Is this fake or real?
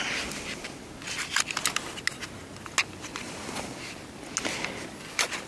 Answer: real